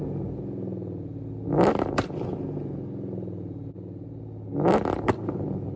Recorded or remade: recorded